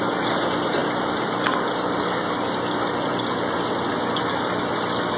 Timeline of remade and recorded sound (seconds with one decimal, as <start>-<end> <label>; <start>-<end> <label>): 0.0-5.2 recorded